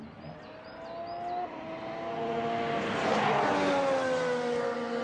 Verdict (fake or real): real